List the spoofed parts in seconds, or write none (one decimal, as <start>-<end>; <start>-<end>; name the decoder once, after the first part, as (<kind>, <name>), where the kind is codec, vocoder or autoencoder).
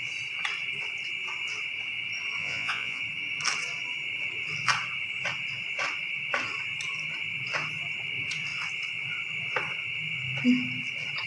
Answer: 2.4-3.0 (vocoder, Vocos)